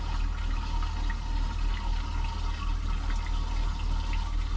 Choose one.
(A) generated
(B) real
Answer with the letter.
B